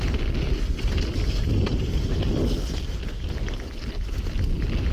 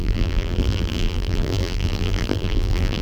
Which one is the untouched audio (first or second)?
first